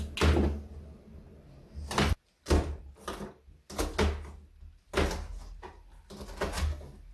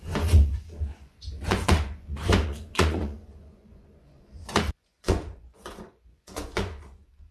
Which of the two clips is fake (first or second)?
second